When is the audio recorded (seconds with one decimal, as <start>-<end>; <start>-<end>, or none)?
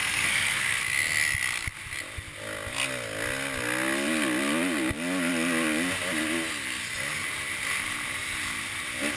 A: 0.8-9.2